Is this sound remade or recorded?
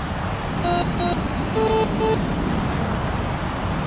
recorded